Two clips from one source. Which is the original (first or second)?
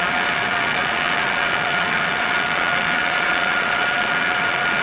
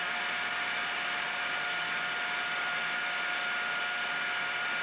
second